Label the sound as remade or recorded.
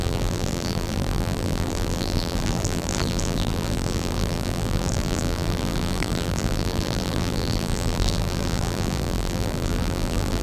remade